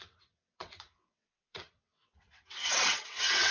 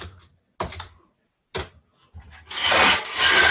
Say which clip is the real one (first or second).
second